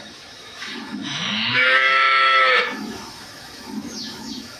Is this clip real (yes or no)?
no